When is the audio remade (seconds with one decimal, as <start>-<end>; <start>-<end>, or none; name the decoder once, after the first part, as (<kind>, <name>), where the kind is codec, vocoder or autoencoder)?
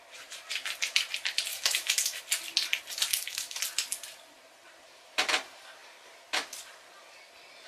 1.5-2.2 (autoencoder, DAC-VAE); 3.1-3.6